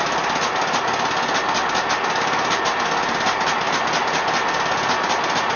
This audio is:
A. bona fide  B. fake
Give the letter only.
A